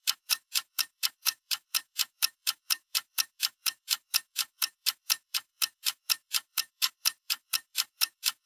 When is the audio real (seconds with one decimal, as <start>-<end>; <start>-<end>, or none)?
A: none